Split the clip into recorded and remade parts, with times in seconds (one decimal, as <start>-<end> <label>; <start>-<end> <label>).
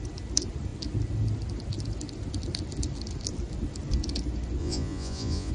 0.0-4.6 recorded; 4.6-5.5 remade